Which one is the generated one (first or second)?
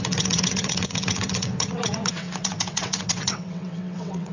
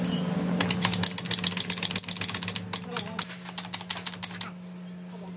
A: first